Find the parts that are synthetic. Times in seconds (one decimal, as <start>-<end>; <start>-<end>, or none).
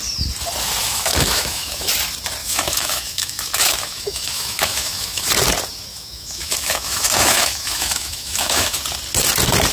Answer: 0.8-1.9; 2.4-5.3; 5.9-8.8